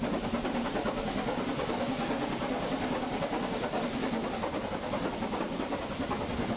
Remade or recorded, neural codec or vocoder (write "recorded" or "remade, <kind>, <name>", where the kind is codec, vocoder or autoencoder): recorded